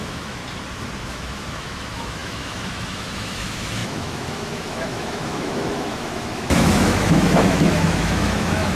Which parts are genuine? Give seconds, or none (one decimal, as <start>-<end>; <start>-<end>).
0.4-1.1